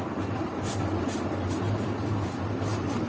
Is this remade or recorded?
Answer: recorded